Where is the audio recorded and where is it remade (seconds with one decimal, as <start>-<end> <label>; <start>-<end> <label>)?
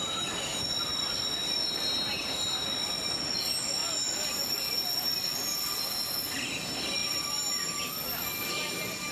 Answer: 0.0-0.5 recorded; 0.5-1.3 remade; 1.3-7.0 recorded; 7.0-7.6 remade; 7.6-9.1 recorded